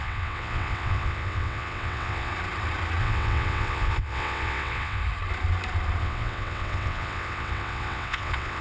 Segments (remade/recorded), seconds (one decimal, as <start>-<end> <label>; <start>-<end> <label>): 0.0-2.3 remade; 2.3-3.0 recorded; 3.0-5.0 remade; 5.0-6.0 recorded; 6.0-8.6 remade